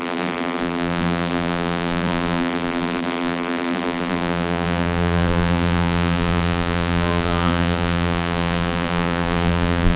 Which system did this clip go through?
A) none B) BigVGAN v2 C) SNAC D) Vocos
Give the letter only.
B